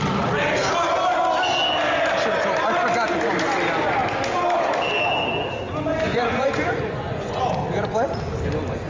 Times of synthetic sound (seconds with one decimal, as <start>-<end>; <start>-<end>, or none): 6.1-7.5

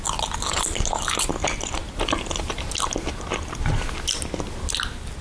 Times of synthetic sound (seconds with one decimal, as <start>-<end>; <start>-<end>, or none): none

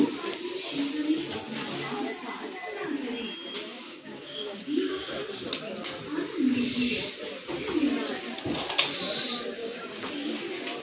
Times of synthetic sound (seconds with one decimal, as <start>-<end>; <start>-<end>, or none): 3.7-5.1; 9.6-10.1

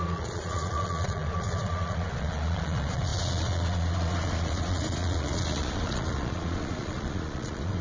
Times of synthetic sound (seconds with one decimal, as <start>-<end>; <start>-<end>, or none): 0.0-7.8

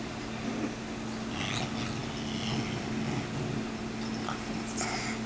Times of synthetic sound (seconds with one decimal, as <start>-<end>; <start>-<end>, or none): none

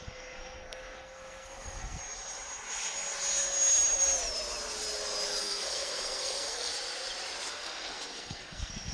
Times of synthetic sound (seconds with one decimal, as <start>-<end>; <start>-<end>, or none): 0.0-2.0; 5.4-6.7; 7.5-8.9

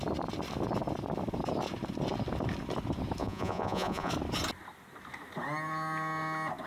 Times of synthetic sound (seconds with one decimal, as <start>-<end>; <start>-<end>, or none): 3.2-4.1